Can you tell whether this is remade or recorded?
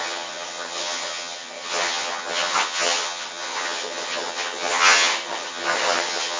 remade